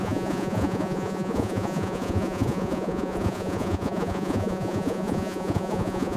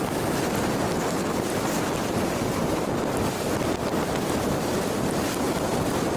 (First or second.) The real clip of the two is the second